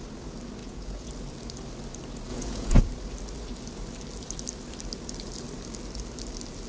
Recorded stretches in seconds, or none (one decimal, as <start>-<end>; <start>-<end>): 0.0-0.6; 1.1-2.3; 2.8-6.7